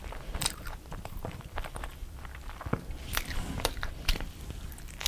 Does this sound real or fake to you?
fake